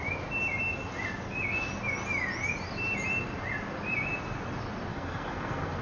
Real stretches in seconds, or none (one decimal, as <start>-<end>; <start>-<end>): 0.0-4.9